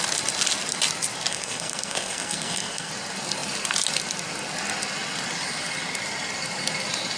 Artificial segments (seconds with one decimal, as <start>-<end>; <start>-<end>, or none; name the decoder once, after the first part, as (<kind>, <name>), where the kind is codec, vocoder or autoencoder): 1.3-2.9 (codec, SNAC)